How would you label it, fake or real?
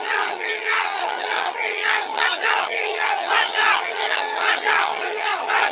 fake